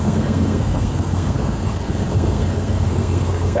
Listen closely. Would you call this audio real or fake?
fake